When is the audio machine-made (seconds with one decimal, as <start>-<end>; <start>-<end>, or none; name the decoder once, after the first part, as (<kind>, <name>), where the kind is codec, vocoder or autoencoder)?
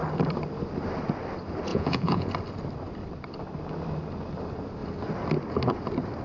1.7-2.3 (vocoder, Vocos)